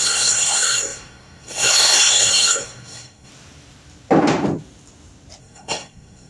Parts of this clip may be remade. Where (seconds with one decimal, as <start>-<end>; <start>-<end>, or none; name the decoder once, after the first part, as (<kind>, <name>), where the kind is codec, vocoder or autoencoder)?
0.0-3.3 (codec, SNAC); 5.4-6.3